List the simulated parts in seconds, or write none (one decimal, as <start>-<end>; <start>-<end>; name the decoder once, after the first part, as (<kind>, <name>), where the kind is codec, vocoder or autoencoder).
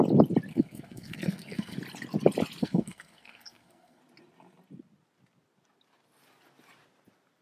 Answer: 0.5-1.8 (codec, SNAC); 2.6-4.0